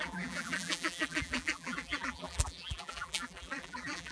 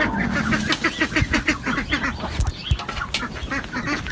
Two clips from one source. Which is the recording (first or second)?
second